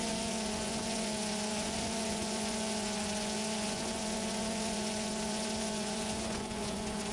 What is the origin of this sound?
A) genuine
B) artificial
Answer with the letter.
B